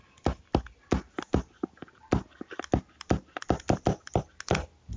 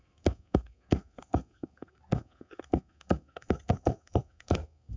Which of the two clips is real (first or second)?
first